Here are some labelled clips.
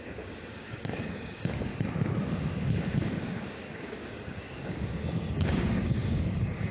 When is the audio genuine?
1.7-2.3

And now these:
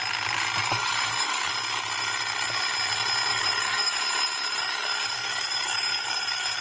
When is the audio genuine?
0.0-0.6; 1.5-3.3; 4.0-4.6

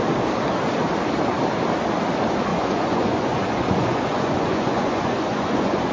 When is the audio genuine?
0.0-2.5

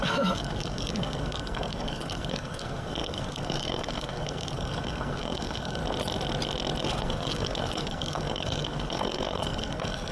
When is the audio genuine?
5.8-6.8

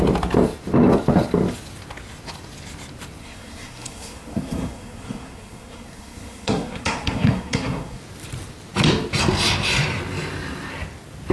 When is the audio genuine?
0.0-3.2; 8.0-11.3

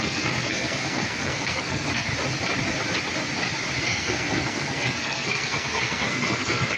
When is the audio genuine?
2.1-3.8